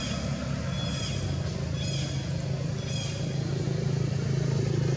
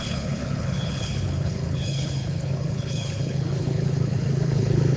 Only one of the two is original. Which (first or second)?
first